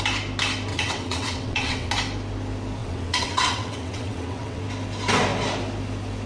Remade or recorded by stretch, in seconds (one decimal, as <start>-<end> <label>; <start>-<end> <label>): 0.0-0.7 recorded; 0.7-1.9 remade; 1.9-2.8 recorded; 2.8-4.6 remade; 4.6-6.3 recorded